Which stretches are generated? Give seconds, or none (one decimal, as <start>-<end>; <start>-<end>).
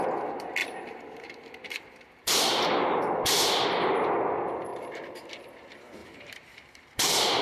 0.6-2.4; 4.7-5.3; 6.0-7.4